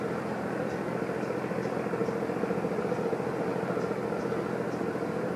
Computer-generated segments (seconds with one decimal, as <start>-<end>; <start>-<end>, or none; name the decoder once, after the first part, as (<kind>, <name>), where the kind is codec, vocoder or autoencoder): none